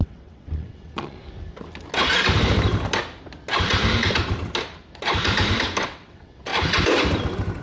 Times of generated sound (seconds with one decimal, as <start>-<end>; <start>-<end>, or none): 0.0-1.2; 5.8-6.5